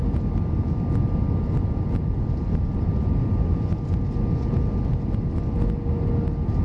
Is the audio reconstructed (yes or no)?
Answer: no